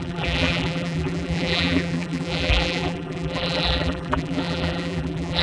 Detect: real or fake fake